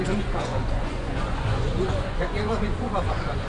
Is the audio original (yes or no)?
no